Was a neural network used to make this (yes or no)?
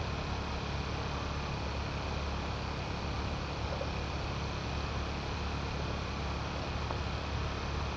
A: no